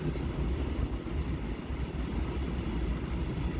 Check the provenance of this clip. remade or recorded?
recorded